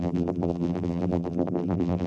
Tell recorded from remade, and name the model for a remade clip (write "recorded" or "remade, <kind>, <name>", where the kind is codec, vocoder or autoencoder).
remade, vocoder, BigVGAN v2